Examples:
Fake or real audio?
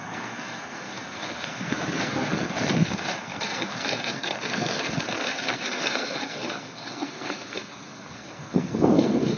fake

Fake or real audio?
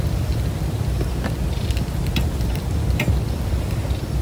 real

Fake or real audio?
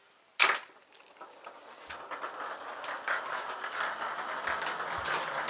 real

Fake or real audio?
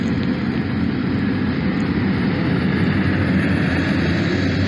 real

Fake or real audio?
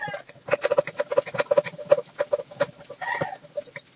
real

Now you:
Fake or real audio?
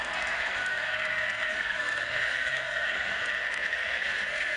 fake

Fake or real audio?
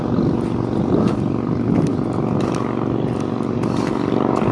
real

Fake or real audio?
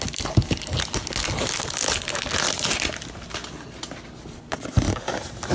real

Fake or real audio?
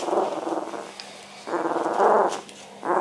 real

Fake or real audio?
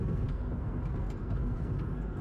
fake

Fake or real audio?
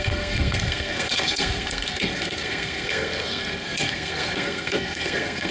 fake